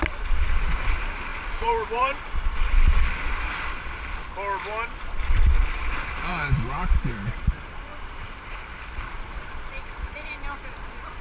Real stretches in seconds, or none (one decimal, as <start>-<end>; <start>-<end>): 0.0-1.3; 2.2-6.3; 7.5-11.2